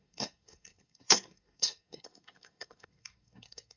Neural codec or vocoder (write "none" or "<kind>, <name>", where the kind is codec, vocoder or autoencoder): codec, SNAC